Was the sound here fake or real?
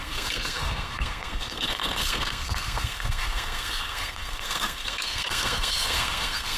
fake